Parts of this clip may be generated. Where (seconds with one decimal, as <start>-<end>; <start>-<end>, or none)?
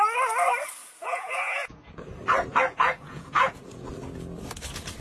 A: 0.8-1.9; 2.7-3.9